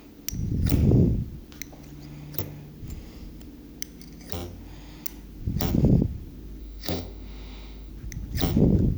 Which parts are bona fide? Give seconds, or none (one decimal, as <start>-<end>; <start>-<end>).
0.0-6.6; 7.9-9.0